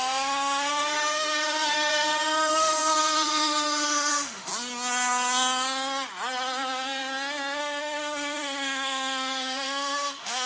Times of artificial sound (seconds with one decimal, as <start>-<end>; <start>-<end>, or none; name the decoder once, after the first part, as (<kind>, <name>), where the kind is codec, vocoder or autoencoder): 0.0-4.5 (autoencoder, DAC-VAE); 7.6-10.5